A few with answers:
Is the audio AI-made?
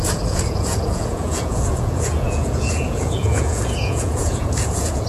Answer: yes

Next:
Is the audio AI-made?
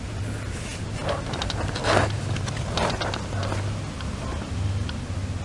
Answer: no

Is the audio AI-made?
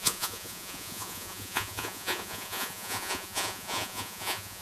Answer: yes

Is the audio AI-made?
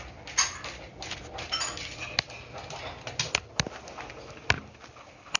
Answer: no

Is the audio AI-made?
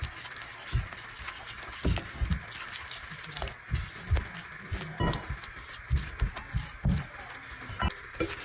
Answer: no